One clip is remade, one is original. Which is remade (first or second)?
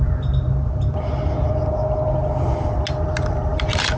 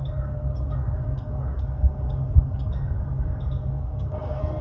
second